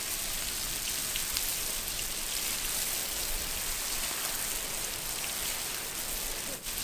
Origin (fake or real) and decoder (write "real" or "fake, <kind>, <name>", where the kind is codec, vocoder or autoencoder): real